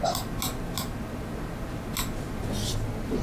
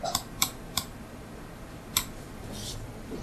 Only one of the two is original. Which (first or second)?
first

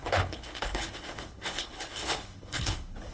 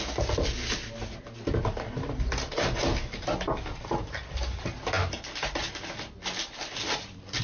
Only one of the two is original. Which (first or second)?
second